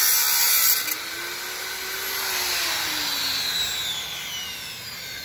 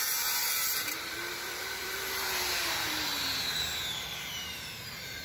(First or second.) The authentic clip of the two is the first